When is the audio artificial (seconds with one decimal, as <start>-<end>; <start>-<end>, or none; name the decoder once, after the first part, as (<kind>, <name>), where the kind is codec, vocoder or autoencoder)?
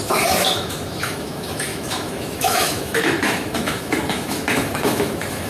0.0-5.5 (autoencoder, DAC-VAE)